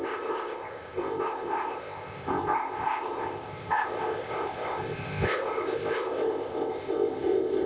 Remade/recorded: remade